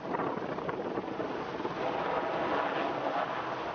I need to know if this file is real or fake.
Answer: real